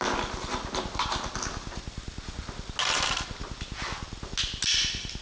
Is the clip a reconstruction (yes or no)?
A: no